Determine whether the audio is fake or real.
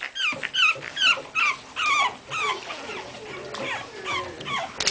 real